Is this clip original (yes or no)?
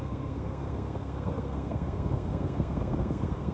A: no